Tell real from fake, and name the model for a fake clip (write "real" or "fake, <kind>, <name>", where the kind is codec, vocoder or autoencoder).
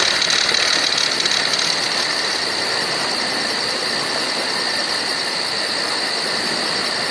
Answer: real